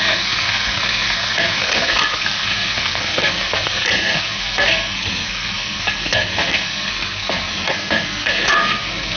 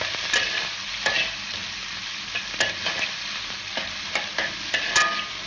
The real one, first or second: second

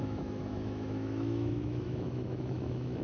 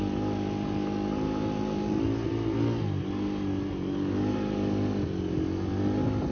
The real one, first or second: second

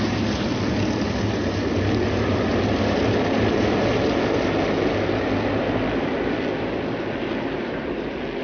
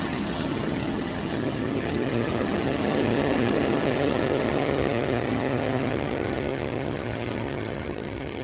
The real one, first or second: first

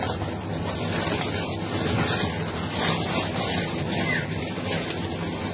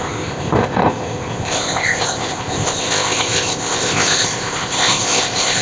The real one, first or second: first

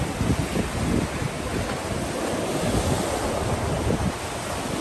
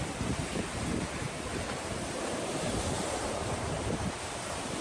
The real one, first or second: first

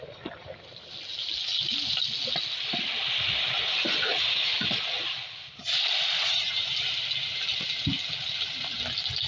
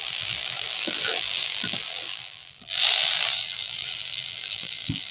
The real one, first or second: first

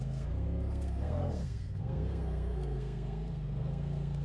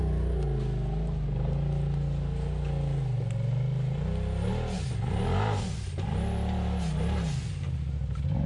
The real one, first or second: second